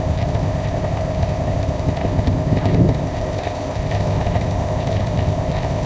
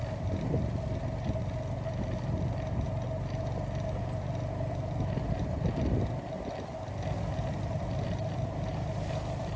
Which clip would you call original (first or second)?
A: second